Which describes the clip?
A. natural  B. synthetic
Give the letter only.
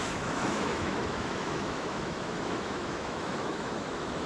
B